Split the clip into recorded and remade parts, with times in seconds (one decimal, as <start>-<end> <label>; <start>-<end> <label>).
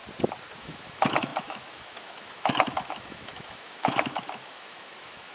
0.0-0.6 recorded; 0.6-5.3 remade